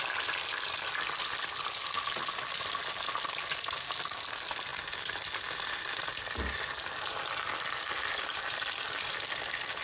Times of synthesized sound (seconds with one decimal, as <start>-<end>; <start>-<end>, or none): none